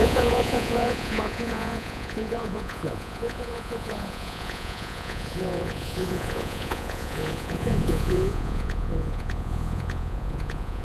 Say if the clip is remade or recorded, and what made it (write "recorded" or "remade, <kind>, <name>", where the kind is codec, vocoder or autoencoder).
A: remade, vocoder, Vocos